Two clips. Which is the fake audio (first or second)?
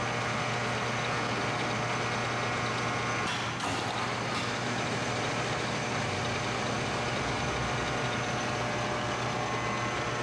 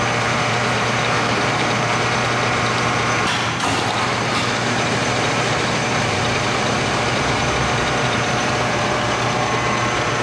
second